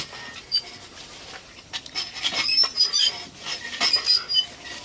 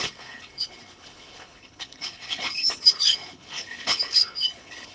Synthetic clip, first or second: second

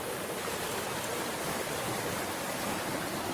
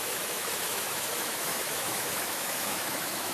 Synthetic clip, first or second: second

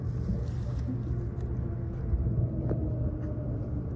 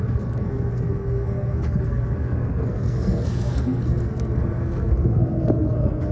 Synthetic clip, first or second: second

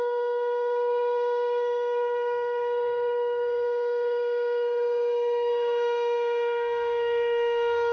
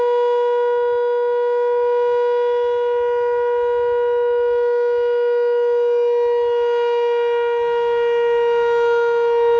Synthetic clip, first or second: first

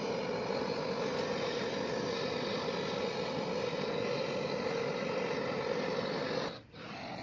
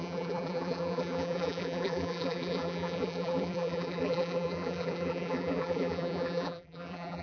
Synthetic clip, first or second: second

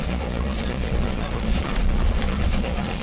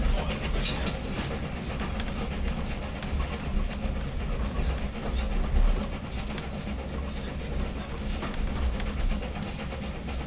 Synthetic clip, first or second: first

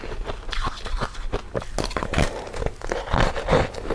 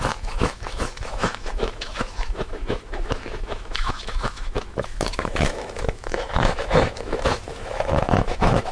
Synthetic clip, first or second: second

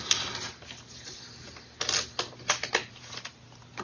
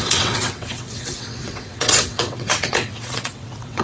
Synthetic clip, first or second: second